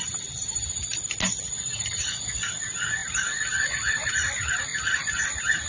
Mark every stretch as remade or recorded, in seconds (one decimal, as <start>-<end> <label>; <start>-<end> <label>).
0.0-3.0 recorded; 3.0-4.1 remade; 4.1-4.7 recorded; 4.7-5.2 remade; 5.2-5.7 recorded